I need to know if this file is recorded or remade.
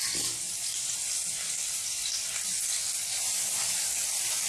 remade